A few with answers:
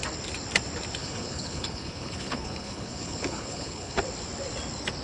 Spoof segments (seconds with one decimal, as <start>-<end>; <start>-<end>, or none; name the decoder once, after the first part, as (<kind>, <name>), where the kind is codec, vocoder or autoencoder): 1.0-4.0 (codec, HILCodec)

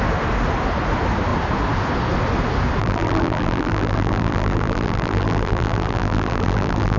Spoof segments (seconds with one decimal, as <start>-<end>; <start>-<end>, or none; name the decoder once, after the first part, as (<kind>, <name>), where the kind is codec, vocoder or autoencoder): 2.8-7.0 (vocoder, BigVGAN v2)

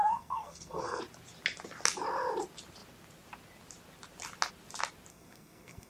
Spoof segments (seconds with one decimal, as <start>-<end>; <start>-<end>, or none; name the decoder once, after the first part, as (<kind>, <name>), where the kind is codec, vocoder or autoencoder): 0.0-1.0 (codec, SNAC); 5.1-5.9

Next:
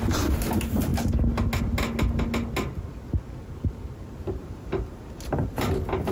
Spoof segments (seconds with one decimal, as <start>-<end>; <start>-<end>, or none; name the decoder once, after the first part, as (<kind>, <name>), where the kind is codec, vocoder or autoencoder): 4.4-5.6 (vocoder, BigVGAN v2)

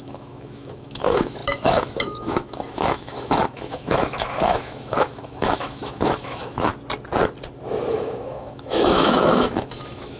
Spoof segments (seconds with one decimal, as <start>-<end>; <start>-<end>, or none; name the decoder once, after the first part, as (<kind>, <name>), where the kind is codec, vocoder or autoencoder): 0.0-6.7 (autoencoder, DAC-VAE); 7.9-10.2

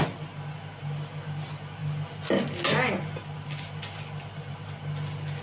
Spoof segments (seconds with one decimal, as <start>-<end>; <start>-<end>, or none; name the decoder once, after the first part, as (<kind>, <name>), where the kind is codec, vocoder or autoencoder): none

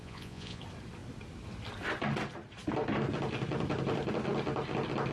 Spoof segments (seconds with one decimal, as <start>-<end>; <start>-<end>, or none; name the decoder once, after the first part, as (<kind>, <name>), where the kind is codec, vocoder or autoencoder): 0.0-0.6 (vocoder, Vocos)

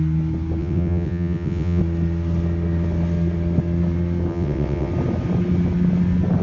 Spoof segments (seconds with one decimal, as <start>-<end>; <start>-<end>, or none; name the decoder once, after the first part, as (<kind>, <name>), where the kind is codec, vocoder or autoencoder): 0.6-1.8 (vocoder, WaveNeXt); 4.3-4.9